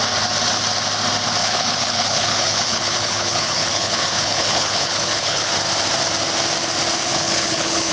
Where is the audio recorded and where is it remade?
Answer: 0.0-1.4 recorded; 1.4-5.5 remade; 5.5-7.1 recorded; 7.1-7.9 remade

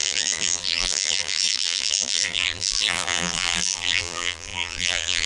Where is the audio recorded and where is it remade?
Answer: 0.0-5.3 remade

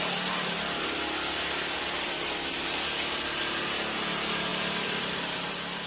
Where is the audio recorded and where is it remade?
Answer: 0.0-4.5 recorded; 4.5-5.1 remade; 5.1-5.9 recorded

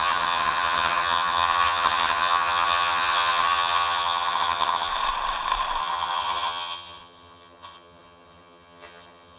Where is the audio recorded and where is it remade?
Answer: 0.0-4.9 remade; 4.9-5.8 recorded; 5.8-9.4 remade

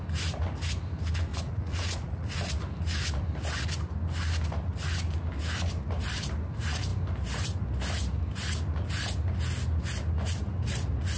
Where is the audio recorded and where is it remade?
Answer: 0.0-1.3 recorded; 1.3-2.5 remade; 2.5-11.2 recorded

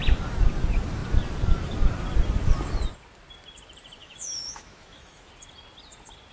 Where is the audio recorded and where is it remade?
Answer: 0.0-4.0 recorded; 4.0-5.3 remade; 5.3-6.3 recorded

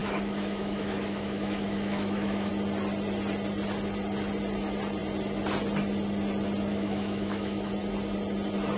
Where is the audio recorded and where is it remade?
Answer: 0.0-2.5 remade; 2.5-6.7 recorded; 6.7-7.7 remade; 7.7-8.8 recorded